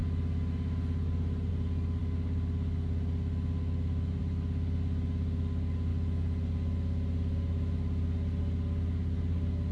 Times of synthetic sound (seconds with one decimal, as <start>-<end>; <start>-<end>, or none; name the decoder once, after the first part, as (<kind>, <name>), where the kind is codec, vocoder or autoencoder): none